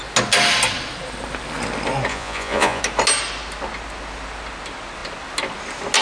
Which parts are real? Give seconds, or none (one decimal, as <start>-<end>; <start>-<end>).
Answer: 0.0-2.1; 2.8-6.0